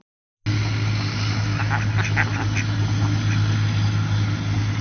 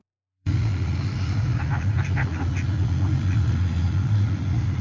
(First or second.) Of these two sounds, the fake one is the second